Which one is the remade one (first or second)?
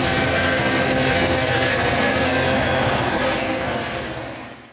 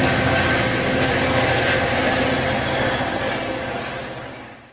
first